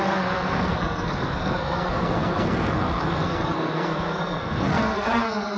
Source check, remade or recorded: remade